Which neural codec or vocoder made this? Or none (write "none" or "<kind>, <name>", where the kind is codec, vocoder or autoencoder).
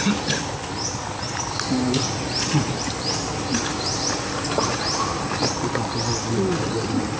none